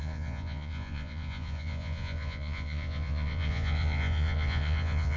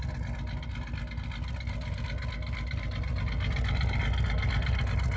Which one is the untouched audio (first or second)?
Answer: second